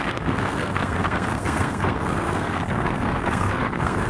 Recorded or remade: remade